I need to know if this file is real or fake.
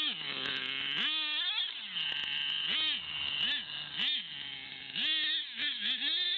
real